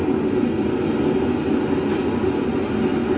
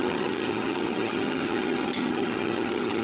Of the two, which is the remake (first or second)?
second